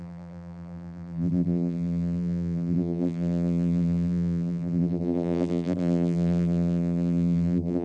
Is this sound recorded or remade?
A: remade